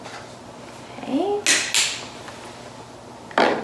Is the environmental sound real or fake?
real